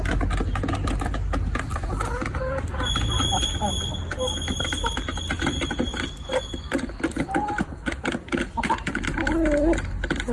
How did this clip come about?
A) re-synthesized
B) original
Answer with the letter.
B